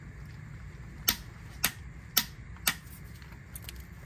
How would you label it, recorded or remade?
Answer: recorded